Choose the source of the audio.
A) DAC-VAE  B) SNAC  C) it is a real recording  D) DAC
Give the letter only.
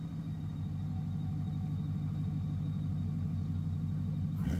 C